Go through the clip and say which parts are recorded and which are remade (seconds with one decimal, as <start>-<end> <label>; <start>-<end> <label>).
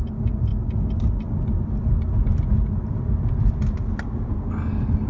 0.0-5.1 recorded